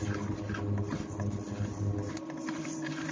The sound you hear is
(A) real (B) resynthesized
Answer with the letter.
A